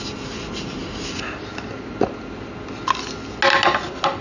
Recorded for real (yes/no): yes